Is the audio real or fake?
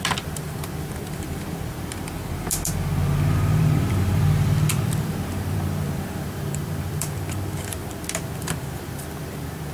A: fake